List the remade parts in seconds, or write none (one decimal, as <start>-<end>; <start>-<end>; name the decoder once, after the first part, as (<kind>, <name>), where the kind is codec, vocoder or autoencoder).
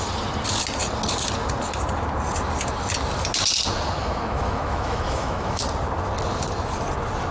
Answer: 4.0-5.6 (autoencoder, DAC-VAE)